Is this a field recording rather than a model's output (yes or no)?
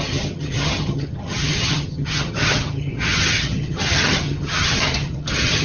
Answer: no